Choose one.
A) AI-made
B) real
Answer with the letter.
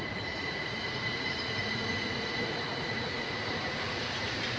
A